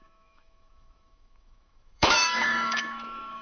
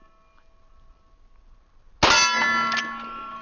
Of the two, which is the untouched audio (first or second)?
second